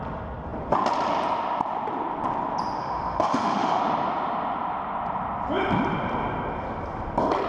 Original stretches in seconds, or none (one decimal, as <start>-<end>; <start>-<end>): 0.0-2.8; 3.8-7.5